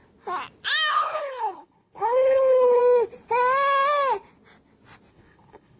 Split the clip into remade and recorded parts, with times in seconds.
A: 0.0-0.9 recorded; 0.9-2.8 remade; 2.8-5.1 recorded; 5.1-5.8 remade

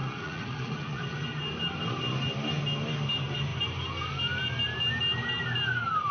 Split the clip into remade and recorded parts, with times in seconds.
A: 0.0-1.0 remade; 1.0-6.1 recorded

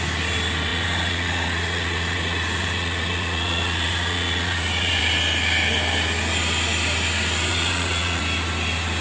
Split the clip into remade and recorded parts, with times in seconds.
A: 0.0-0.7 recorded; 0.7-5.0 remade; 5.0-7.5 recorded; 7.5-8.2 remade; 8.2-9.0 recorded

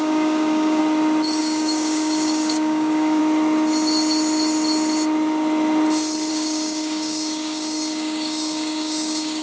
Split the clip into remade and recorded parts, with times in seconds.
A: 0.0-0.8 remade; 0.8-1.4 recorded; 1.4-3.2 remade; 3.2-6.3 recorded; 6.3-9.4 remade

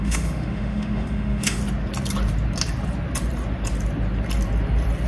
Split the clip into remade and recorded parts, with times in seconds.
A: 0.0-1.6 remade; 1.6-5.1 recorded